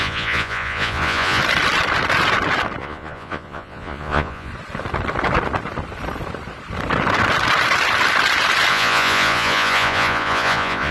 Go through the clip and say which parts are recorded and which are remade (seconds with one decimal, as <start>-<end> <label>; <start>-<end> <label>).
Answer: 0.0-1.4 remade; 1.4-2.8 recorded; 2.8-4.5 remade; 4.5-8.7 recorded; 8.7-10.9 remade